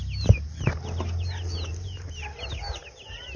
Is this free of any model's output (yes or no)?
yes